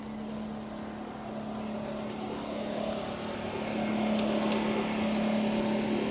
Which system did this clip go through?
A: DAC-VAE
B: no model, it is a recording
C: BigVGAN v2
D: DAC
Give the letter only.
B